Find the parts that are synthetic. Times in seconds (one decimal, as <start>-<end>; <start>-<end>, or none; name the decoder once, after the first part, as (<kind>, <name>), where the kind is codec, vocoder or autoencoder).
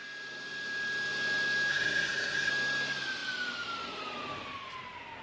1.7-2.5 (codec, SNAC)